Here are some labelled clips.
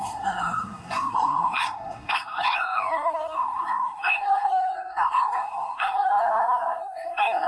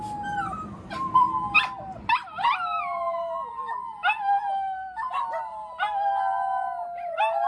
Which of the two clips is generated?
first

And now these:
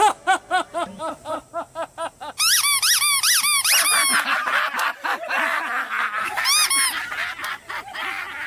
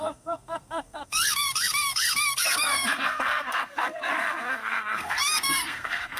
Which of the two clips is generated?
second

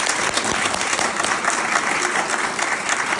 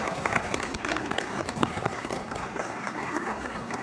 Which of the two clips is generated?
second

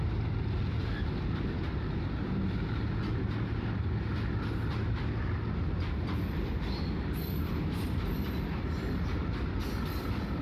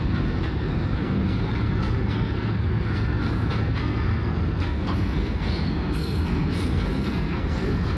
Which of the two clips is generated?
second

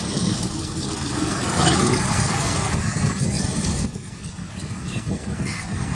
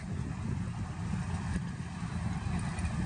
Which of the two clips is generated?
first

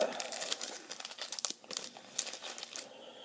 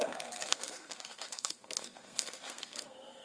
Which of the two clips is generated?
second